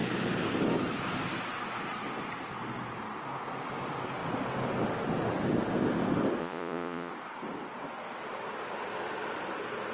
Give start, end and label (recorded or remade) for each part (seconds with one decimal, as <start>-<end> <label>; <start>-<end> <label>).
0.0-6.4 recorded; 6.4-7.1 remade; 7.1-9.9 recorded